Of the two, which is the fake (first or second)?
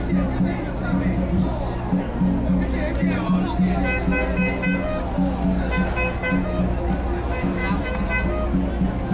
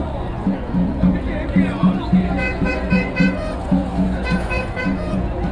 second